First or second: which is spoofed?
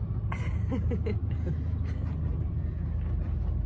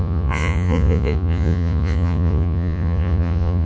second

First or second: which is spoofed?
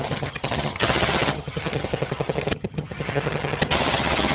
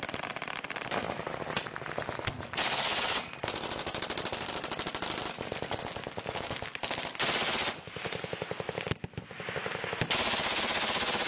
first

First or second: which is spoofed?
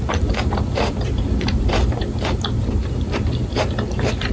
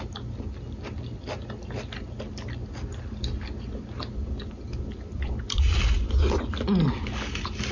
first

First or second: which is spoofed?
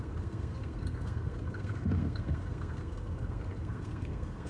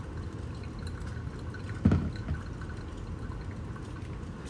first